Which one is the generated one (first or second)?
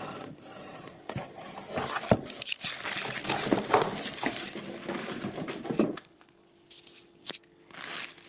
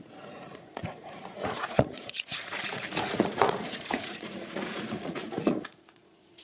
second